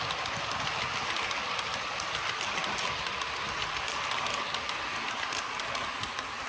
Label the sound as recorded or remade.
recorded